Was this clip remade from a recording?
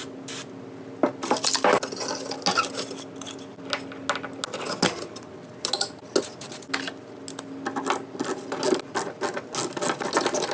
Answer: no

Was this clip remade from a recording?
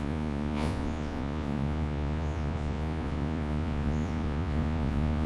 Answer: yes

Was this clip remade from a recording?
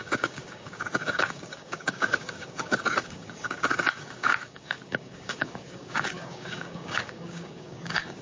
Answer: yes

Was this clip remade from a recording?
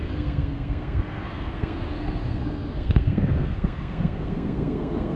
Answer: yes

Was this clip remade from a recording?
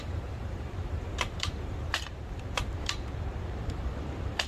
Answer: yes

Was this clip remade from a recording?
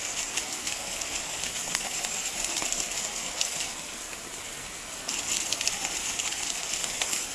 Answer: yes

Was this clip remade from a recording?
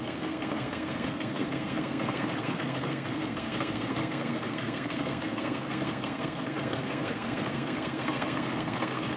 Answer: yes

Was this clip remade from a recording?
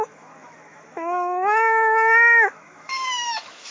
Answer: yes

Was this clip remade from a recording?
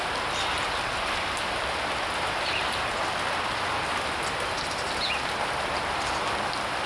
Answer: no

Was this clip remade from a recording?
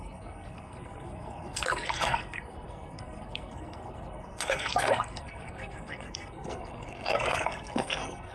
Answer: yes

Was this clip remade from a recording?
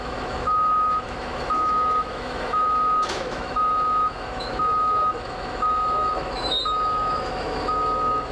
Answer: yes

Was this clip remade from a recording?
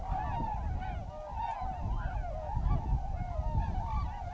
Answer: no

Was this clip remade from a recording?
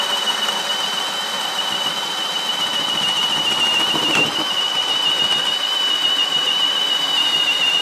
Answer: no